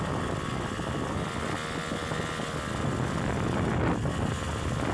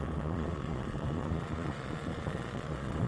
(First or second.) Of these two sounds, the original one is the first